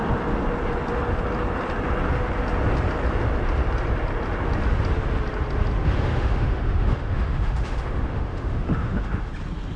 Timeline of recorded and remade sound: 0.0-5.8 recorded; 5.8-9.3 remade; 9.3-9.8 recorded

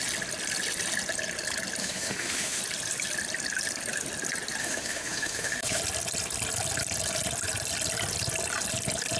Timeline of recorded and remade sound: 0.0-1.8 recorded; 1.8-2.6 remade; 2.6-4.6 recorded; 4.6-5.8 remade; 5.8-9.2 recorded